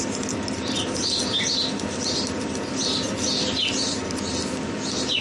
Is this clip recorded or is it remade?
recorded